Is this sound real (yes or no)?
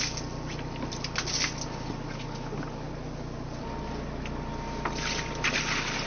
yes